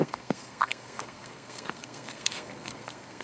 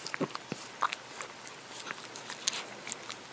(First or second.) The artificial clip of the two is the first